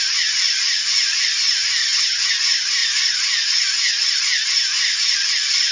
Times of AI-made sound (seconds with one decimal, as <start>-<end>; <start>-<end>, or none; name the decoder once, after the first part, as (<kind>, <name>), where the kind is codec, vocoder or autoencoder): 1.8-2.3 (vocoder, HiFi-GAN)